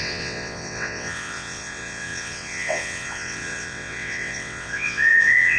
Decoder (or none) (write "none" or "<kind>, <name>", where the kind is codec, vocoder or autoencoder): vocoder, WaveNeXt